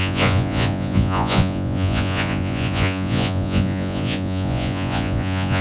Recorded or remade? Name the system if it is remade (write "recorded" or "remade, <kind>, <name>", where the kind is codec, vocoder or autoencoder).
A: remade, vocoder, Vocos